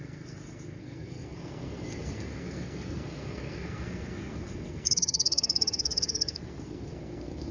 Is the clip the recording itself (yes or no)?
no